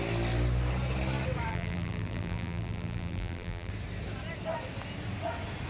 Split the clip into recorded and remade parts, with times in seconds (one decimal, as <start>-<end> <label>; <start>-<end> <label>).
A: 0.0-1.5 recorded; 1.5-3.7 remade; 3.7-5.7 recorded